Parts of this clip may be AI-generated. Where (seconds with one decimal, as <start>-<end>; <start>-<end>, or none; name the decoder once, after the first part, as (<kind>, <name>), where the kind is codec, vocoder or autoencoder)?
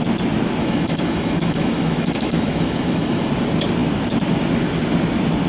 0.6-3.3 (autoencoder, DAC-VAE)